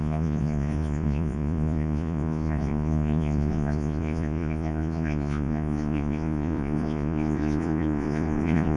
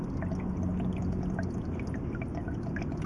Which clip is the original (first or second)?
second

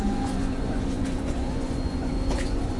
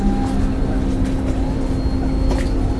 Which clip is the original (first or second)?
second